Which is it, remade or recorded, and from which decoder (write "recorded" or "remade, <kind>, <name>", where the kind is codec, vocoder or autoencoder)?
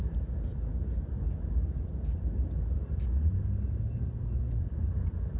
recorded